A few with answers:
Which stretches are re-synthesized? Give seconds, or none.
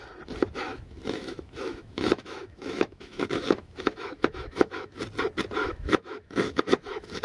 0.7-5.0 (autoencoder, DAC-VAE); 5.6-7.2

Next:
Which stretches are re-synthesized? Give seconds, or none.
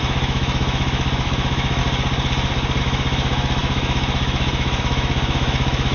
0.0-1.8 (autoencoder, DAC-VAE); 2.8-5.9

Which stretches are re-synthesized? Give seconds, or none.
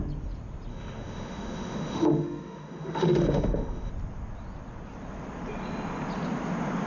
0.7-3.9 (autoencoder, DAC-VAE)